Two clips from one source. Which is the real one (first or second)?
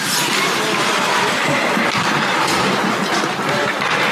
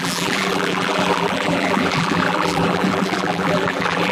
first